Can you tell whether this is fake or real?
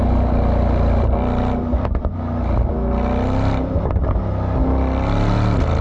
real